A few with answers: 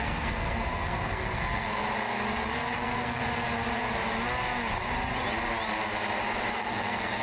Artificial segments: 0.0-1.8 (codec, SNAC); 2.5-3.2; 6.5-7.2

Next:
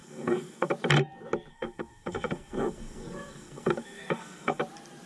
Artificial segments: 0.0-0.7 (codec, SNAC); 1.5-4.6

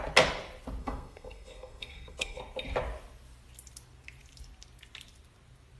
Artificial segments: 0.8-2.4 (codec, SNAC)